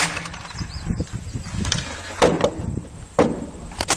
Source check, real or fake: fake